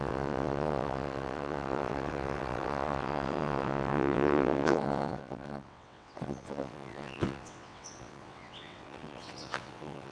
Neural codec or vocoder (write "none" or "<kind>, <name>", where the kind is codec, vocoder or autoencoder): vocoder, WaveNeXt